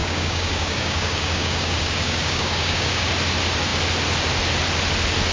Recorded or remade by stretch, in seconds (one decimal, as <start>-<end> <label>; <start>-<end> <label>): 0.0-3.1 remade; 3.1-5.3 recorded